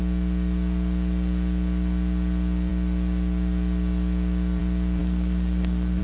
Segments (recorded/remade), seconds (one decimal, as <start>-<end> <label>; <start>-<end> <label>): 0.0-5.0 recorded; 5.0-6.0 remade